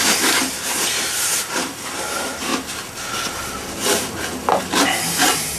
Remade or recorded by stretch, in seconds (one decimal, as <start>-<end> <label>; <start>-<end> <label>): 0.0-2.5 remade; 2.5-4.6 recorded; 4.6-5.6 remade